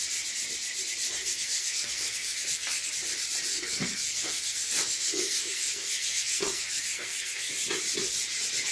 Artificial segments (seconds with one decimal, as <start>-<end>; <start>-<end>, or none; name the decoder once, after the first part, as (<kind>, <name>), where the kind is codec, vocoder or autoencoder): 1.2-2.9 (codec, SNAC); 3.5-7.5